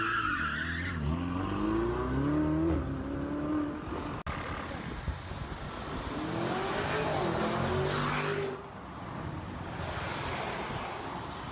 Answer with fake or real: real